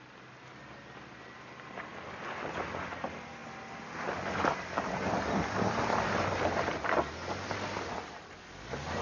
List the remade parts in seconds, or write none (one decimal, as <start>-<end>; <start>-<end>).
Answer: none